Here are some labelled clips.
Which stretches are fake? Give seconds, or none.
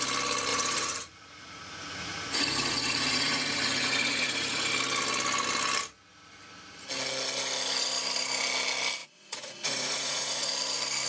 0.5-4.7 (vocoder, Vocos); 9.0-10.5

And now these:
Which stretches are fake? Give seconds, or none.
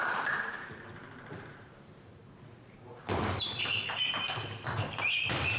0.0-5.6 (vocoder, BigVGAN v2)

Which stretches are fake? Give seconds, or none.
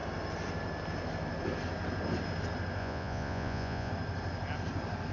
2.8-3.9 (vocoder, Vocos)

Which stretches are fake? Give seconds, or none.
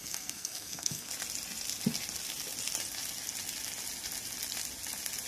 0.0-1.1 (codec, SNAC)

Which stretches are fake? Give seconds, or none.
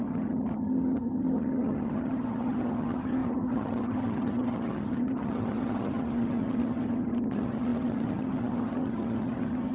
0.0-9.7 (vocoder, HiFi-GAN)